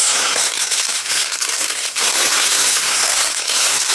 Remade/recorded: remade